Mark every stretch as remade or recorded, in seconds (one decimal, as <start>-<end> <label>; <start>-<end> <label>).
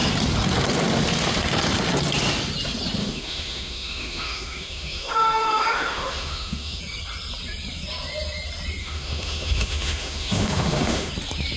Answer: 0.0-3.0 recorded; 3.0-6.8 remade; 6.8-8.8 recorded; 8.8-11.1 remade; 11.1-11.6 recorded